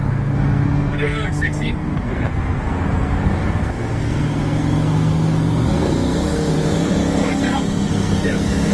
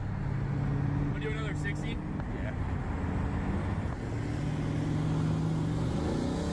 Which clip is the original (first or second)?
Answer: second